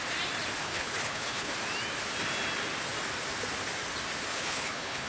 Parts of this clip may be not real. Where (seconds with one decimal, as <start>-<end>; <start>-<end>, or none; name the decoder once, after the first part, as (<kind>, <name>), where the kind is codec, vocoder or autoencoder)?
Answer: 0.6-1.5 (codec, HILCodec); 4.3-5.1